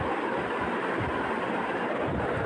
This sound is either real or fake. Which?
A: real